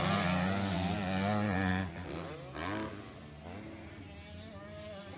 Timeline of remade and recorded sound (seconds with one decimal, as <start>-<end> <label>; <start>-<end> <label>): 0.0-5.2 recorded